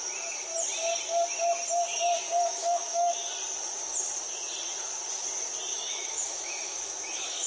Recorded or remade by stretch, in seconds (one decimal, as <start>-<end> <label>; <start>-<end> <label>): 0.0-2.5 recorded; 2.5-3.3 remade; 3.3-5.7 recorded; 5.7-7.5 remade